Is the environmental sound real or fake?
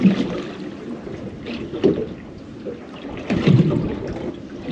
real